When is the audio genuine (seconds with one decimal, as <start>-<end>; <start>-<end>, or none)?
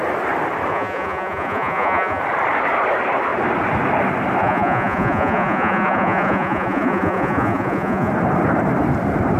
0.0-0.7; 2.2-4.4; 8.1-9.4